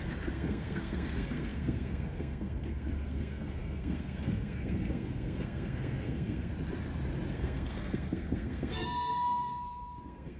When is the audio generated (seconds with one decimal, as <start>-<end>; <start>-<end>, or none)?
0.0-6.5; 7.3-10.4